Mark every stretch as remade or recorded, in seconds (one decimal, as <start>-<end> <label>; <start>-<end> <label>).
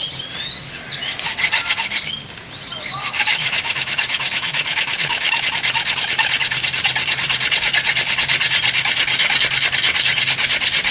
0.0-3.3 recorded; 3.3-5.5 remade; 5.5-10.9 recorded